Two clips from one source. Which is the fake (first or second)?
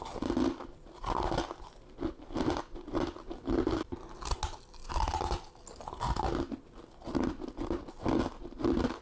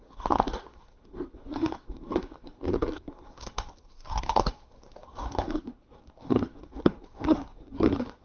second